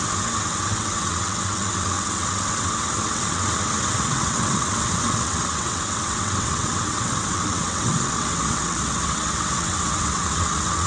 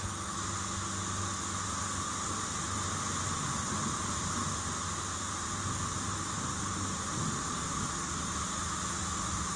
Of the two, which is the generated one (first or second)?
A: first